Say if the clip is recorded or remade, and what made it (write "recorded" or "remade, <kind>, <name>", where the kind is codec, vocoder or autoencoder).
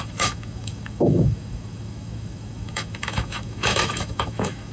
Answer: remade, autoencoder, DAC-VAE